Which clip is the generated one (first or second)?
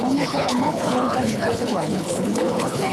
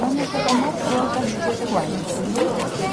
first